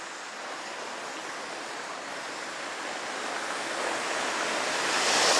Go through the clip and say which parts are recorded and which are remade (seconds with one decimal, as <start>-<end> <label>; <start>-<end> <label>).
0.0-5.4 recorded